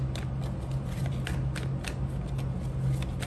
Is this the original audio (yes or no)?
yes